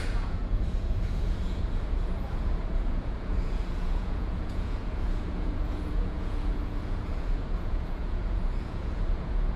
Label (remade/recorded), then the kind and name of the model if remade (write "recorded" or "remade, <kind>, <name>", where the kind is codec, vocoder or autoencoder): remade, vocoder, Vocos